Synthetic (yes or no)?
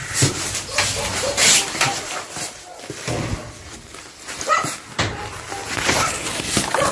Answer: no